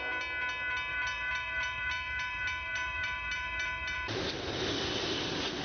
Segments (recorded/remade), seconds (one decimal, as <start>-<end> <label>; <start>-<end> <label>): 0.0-0.9 recorded; 0.9-4.3 remade; 4.3-5.6 recorded